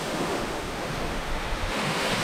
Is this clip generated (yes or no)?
yes